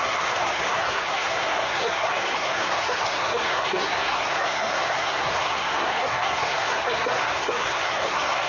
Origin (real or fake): fake